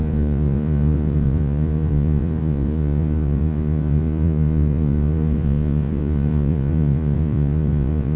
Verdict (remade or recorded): remade